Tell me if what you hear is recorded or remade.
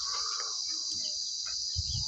remade